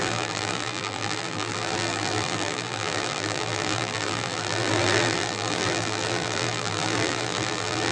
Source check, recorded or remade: remade